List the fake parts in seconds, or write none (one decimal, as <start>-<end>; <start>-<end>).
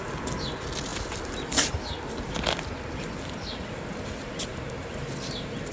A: 4.8-5.7